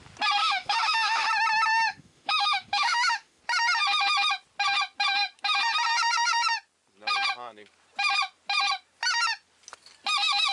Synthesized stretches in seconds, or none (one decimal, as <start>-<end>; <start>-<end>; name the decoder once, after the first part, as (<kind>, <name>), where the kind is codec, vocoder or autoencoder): 0.4-1.3 (autoencoder, DAC-VAE); 1.9-3.4